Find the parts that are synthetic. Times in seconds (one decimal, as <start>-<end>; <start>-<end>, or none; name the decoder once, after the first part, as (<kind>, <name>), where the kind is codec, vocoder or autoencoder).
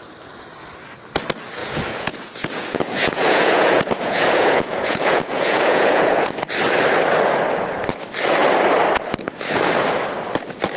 1.6-6.3 (vocoder, Vocos)